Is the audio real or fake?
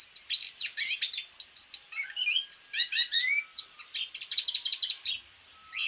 real